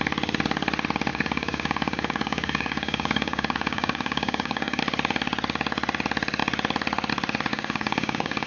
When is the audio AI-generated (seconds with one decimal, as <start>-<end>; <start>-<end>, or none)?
1.1-4.8; 7.5-8.5